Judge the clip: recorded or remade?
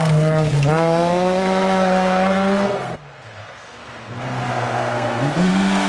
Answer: remade